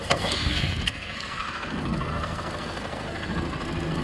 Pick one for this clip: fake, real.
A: fake